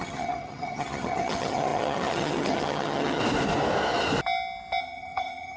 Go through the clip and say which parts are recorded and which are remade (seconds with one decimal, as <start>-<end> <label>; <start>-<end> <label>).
0.0-3.2 remade; 3.2-4.8 recorded; 4.8-5.6 remade

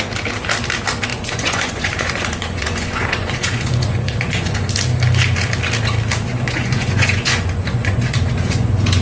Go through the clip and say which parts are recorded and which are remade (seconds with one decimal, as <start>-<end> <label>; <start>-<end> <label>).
0.0-1.1 recorded; 1.1-4.7 remade; 4.7-6.3 recorded; 6.3-9.0 remade

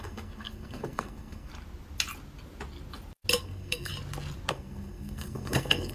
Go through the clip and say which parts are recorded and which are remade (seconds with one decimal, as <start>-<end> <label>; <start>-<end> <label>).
0.0-1.5 remade; 1.5-3.4 recorded; 3.4-3.9 remade; 3.9-4.5 recorded; 4.5-5.9 remade

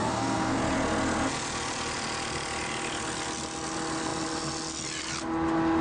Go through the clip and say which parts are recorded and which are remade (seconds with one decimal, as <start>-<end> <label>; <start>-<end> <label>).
0.0-0.6 remade; 0.6-5.8 recorded

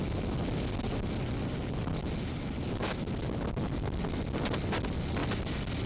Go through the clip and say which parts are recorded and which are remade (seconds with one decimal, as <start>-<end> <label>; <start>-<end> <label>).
0.0-5.9 recorded

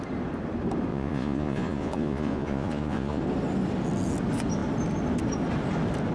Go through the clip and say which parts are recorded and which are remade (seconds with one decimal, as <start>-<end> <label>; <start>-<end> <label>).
0.0-0.9 recorded; 0.9-3.2 remade; 3.2-6.1 recorded

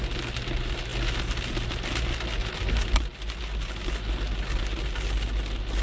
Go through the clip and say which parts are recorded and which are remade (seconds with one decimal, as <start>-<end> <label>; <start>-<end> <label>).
0.0-5.8 recorded

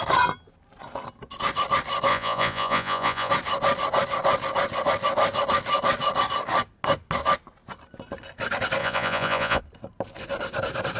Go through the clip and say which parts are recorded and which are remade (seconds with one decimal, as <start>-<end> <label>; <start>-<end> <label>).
0.0-2.1 recorded; 2.1-3.3 remade; 3.3-8.8 recorded; 8.8-9.6 remade; 9.6-11.0 recorded